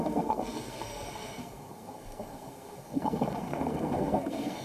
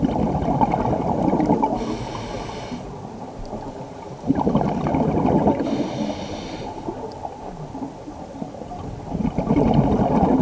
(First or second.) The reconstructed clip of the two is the first